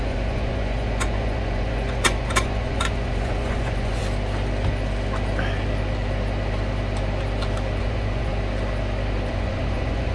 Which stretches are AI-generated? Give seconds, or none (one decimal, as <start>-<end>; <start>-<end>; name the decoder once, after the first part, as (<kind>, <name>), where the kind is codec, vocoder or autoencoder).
0.0-4.0 (vocoder, Vocos); 7.8-8.3; 9.3-10.1